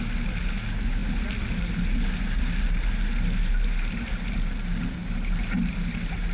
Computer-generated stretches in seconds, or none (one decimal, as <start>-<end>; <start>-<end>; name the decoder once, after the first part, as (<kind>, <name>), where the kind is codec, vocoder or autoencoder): none